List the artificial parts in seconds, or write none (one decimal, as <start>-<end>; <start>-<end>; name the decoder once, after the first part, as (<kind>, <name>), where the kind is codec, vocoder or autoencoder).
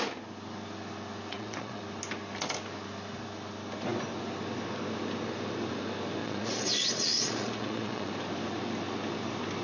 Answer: 1.3-1.8 (vocoder, Vocos); 6.2-8.1